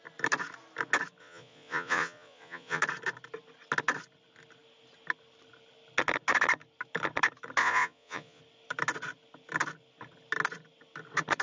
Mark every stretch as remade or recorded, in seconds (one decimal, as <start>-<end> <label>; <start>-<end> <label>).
0.0-1.2 recorded; 1.2-2.8 remade; 2.8-7.6 recorded; 7.6-8.4 remade; 8.4-11.4 recorded